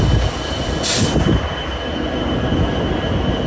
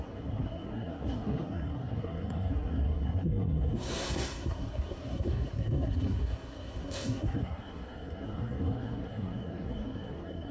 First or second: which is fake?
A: second